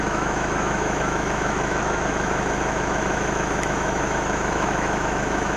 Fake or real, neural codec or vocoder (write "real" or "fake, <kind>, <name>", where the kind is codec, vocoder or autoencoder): fake, autoencoder, DAC-VAE